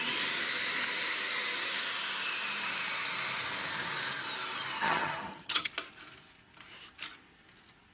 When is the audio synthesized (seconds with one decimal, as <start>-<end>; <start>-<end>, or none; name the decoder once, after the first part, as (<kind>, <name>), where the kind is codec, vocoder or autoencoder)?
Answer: 4.8-5.7 (vocoder, HiFi-GAN)

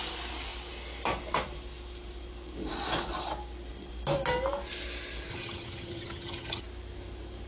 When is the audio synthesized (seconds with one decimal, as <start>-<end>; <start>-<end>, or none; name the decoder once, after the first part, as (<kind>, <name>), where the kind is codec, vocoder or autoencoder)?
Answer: 5.3-6.6 (vocoder, HiFi-GAN)

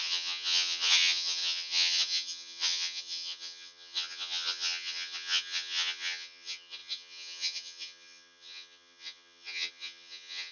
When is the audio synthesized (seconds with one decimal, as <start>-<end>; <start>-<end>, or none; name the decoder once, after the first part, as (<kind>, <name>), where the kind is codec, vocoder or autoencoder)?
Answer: 0.0-10.5 (vocoder, HiFi-GAN)

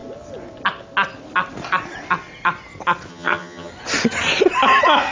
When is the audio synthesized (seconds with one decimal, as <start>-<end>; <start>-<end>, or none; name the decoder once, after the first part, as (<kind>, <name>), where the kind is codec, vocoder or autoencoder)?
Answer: 3.1-3.7 (vocoder, HiFi-GAN)